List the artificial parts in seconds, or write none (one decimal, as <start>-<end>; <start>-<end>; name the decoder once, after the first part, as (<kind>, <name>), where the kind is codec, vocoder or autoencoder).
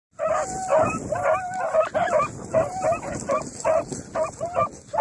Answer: 0.7-2.9 (vocoder, BigVGAN v2)